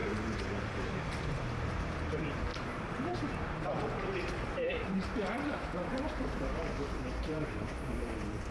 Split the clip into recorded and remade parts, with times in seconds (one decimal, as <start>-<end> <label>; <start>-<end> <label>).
0.0-2.5 remade; 2.5-3.3 recorded; 3.3-8.5 remade